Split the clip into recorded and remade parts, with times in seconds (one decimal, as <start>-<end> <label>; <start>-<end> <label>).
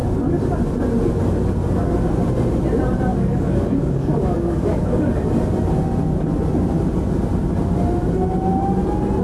0.0-3.1 recorded; 3.1-5.1 remade; 5.1-9.2 recorded